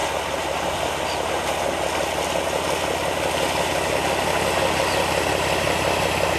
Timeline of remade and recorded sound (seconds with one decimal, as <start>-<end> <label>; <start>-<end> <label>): 0.0-6.4 recorded